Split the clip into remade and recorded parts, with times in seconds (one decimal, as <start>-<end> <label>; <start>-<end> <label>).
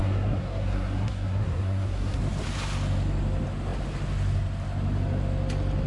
0.0-2.2 remade; 2.2-5.9 recorded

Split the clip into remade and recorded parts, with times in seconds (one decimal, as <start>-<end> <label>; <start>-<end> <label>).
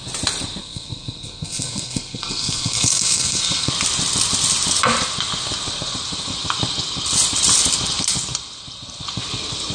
0.0-0.6 recorded; 0.6-3.7 remade; 3.7-9.7 recorded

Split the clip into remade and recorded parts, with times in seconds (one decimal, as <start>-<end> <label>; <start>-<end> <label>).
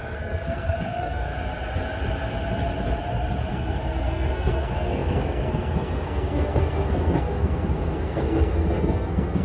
0.0-1.3 remade; 1.3-3.5 recorded; 3.5-9.4 remade